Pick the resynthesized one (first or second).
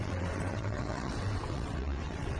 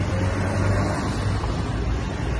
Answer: first